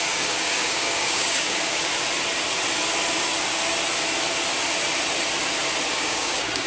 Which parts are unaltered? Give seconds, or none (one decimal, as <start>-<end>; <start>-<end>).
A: 1.9-5.9